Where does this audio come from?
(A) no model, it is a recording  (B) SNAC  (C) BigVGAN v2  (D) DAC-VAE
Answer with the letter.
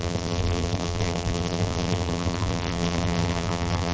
C